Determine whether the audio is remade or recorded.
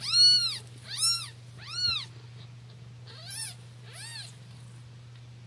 recorded